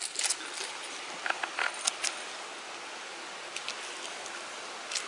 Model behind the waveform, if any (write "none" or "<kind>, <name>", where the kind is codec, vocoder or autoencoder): none